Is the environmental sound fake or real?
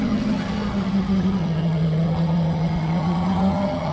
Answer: fake